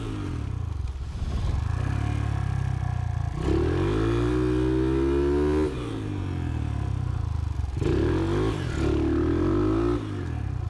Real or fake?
real